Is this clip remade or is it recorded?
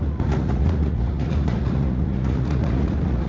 remade